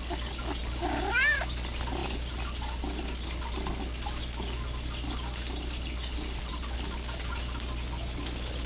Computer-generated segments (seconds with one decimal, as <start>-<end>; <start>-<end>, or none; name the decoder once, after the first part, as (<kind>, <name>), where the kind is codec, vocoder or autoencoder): none